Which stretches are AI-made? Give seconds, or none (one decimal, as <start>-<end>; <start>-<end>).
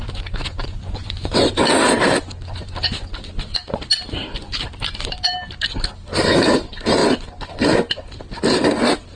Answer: 0.0-1.4